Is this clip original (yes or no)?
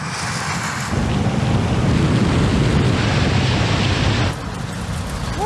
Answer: yes